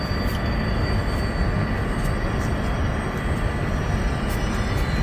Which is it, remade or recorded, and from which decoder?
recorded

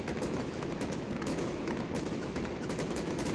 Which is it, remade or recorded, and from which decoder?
remade, autoencoder, DAC-VAE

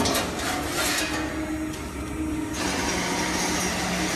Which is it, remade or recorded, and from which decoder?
recorded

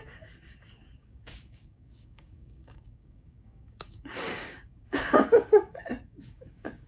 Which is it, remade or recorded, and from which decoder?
remade, codec, DAC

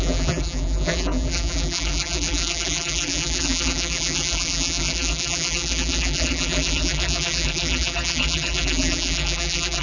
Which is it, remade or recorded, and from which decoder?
remade, vocoder, BigVGAN v2